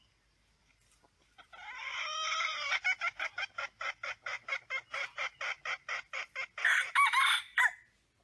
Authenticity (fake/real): real